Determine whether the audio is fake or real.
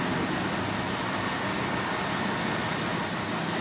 real